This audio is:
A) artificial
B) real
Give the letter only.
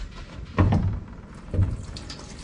A